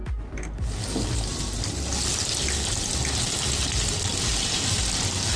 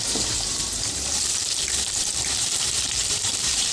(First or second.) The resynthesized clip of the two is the second